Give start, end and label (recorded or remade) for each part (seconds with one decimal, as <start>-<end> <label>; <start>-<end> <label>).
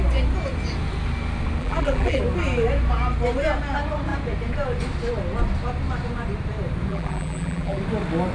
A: 0.0-1.6 recorded; 1.6-2.2 remade; 2.2-6.9 recorded; 6.9-7.8 remade; 7.8-8.3 recorded